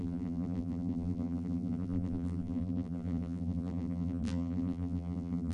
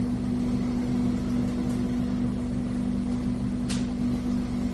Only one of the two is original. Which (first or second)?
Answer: second